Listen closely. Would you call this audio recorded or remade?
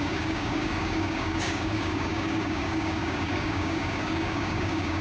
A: remade